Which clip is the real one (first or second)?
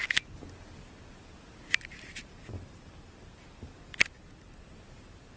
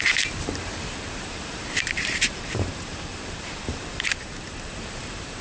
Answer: first